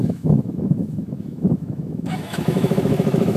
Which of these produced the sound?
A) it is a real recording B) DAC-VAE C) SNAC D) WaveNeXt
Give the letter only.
B